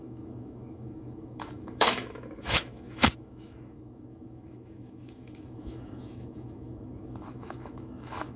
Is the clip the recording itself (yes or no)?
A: no